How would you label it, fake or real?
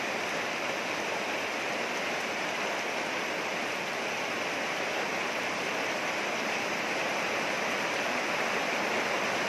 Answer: fake